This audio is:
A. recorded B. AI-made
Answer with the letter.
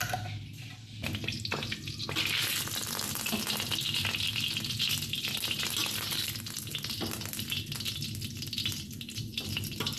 A